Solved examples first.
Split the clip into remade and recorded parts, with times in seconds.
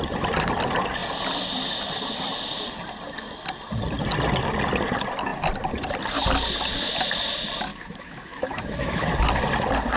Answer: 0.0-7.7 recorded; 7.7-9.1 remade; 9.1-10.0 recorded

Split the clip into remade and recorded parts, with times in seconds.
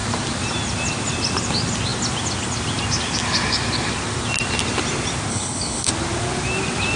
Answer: 0.0-5.3 recorded; 5.3-5.9 remade; 5.9-7.0 recorded